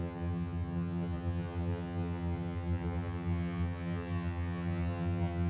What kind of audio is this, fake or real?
fake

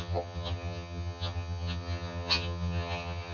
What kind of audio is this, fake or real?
fake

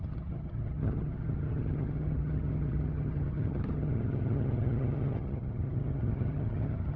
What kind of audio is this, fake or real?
fake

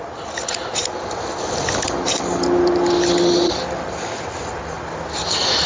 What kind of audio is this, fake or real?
real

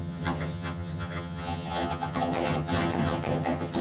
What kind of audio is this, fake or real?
fake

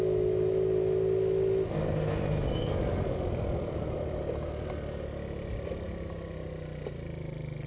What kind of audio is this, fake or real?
real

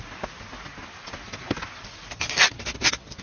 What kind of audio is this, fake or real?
real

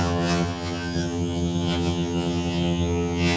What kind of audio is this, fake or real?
fake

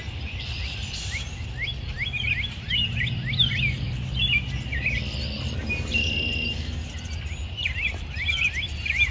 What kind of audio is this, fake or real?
real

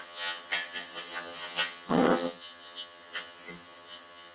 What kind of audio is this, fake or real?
fake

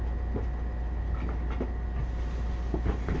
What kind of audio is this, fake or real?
real